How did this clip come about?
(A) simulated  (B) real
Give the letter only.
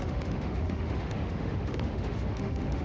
A